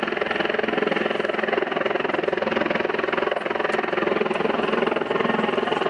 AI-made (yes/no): no